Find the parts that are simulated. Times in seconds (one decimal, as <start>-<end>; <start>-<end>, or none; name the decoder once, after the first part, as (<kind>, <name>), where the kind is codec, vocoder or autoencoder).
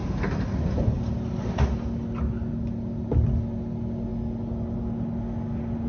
none